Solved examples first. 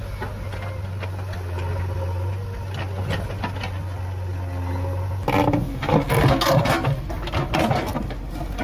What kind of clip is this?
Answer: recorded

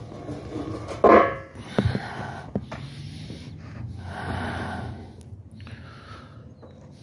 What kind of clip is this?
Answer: recorded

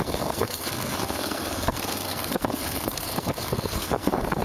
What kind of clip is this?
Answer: remade